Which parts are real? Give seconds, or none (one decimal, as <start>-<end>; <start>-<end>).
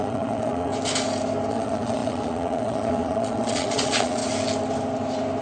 0.7-1.5; 4.2-5.4